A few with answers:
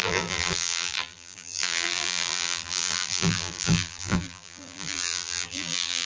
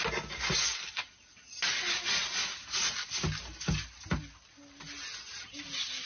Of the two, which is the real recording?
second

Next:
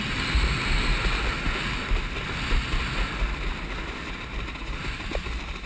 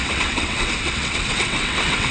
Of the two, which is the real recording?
first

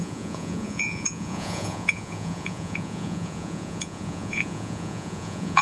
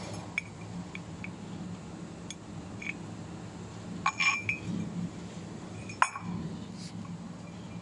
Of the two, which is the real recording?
second